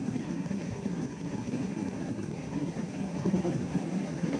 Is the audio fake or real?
fake